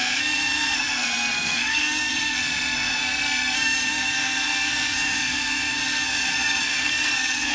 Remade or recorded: remade